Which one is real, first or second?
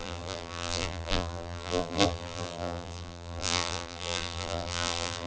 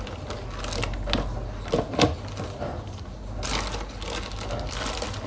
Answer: second